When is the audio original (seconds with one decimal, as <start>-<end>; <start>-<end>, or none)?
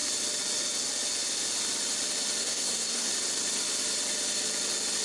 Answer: 0.0-2.4; 3.1-5.0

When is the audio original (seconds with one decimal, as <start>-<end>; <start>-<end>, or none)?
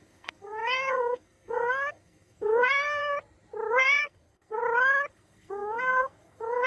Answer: 3.0-3.7; 4.6-5.1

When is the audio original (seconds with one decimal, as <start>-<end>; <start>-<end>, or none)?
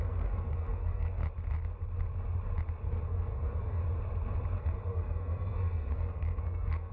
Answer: 1.2-3.0; 3.8-4.6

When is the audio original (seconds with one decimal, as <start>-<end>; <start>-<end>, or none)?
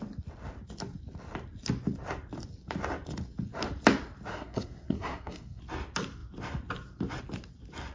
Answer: 0.0-4.3; 5.6-7.9